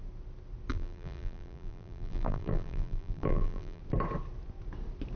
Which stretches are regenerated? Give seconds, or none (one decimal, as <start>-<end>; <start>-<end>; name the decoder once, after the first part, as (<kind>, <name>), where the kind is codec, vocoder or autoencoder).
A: 0.7-3.8 (vocoder, BigVGAN v2)